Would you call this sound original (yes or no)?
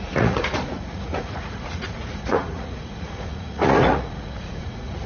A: no